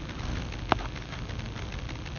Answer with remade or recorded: recorded